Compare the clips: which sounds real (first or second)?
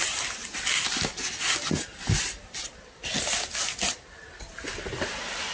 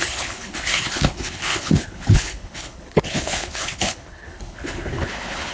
first